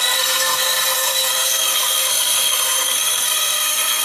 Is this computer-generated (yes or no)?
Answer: yes